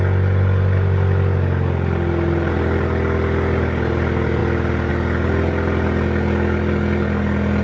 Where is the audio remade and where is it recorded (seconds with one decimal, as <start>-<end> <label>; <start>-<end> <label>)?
0.0-7.6 recorded

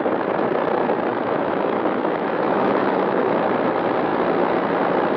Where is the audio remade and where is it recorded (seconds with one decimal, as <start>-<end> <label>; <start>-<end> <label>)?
0.0-1.1 recorded; 1.1-3.2 remade; 3.2-5.2 recorded

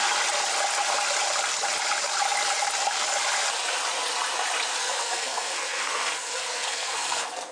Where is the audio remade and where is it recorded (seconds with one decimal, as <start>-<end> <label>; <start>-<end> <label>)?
0.0-4.8 recorded; 4.8-7.5 remade

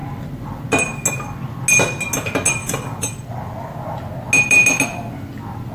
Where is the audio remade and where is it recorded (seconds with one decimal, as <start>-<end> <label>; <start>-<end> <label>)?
0.0-0.6 remade; 0.6-2.6 recorded; 2.6-3.5 remade; 3.5-5.7 recorded

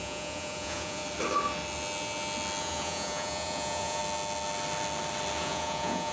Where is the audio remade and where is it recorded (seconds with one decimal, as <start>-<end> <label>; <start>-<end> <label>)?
0.0-1.0 remade; 1.0-2.6 recorded; 2.6-4.0 remade; 4.0-5.4 recorded; 5.4-6.1 remade

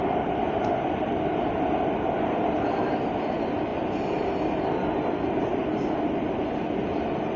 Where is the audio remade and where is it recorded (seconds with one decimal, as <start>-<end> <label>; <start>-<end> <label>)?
0.0-7.4 recorded

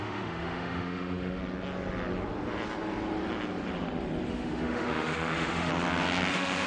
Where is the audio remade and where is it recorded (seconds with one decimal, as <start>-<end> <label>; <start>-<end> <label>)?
0.0-1.4 remade; 1.4-4.3 recorded; 4.3-5.7 remade; 5.7-6.3 recorded; 6.3-6.7 remade

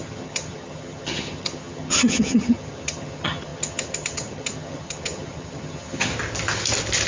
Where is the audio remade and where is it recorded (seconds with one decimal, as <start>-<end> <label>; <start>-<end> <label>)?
0.0-6.1 remade; 6.1-7.1 recorded